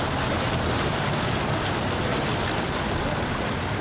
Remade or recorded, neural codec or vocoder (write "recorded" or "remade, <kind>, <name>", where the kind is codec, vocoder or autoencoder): recorded